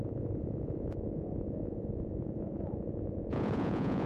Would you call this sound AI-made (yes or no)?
yes